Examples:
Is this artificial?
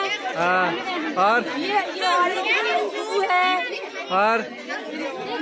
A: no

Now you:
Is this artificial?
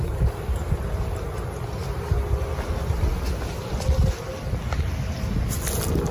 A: no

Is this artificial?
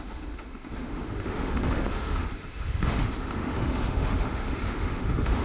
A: yes